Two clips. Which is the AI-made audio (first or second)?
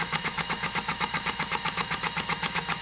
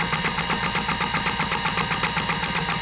first